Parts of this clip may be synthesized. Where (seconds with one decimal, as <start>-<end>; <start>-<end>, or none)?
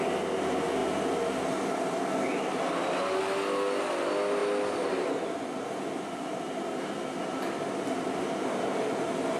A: none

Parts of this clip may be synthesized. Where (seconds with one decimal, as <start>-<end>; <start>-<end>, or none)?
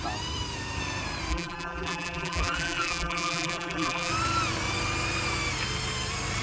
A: 1.3-4.1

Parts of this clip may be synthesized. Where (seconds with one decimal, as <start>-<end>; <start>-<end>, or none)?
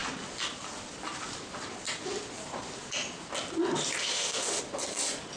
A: 4.0-4.6